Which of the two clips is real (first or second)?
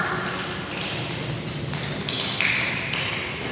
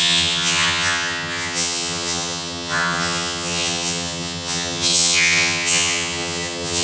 first